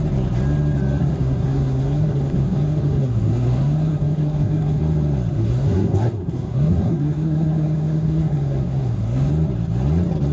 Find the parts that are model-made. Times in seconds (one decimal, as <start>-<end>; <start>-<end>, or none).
1.0-4.8; 5.3-9.3